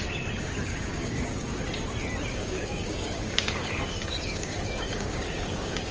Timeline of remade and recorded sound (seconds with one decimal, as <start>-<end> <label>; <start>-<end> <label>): 0.0-0.7 recorded; 0.7-1.6 remade; 1.6-2.3 recorded; 2.3-5.9 remade